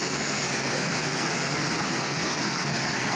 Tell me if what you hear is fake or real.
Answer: fake